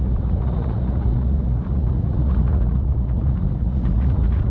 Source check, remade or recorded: remade